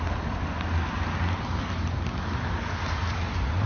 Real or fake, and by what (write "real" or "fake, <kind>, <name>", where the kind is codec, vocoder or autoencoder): real